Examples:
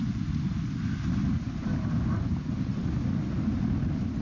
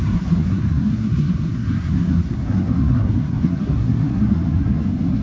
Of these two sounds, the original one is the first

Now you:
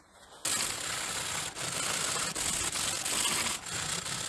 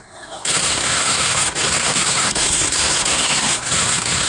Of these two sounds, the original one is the first